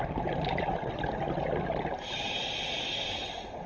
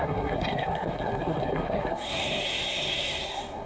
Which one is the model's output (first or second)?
second